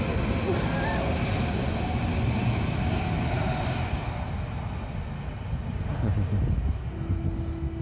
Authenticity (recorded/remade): recorded